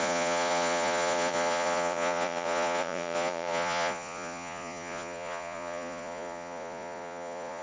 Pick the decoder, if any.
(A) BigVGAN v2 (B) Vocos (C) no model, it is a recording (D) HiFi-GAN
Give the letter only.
B